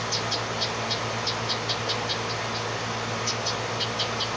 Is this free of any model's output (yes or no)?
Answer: yes